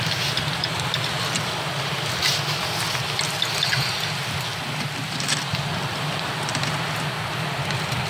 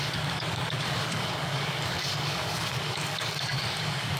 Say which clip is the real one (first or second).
first